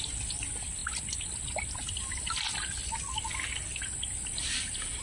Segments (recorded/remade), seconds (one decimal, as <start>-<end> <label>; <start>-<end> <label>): 0.0-5.0 recorded